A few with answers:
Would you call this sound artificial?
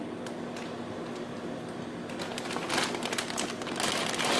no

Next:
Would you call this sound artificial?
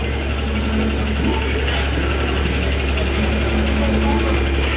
no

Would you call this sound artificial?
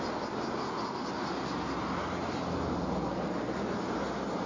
no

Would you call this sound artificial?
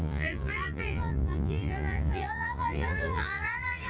yes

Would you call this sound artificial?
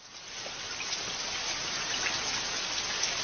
no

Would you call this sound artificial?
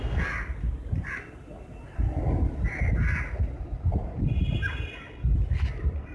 no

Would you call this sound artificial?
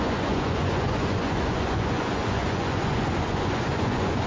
yes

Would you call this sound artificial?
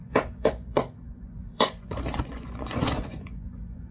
yes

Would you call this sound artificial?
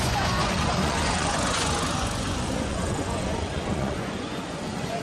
yes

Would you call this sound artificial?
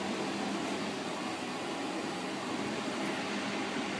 no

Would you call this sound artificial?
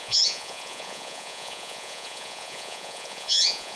yes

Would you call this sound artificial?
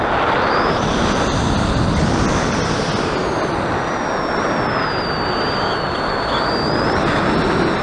no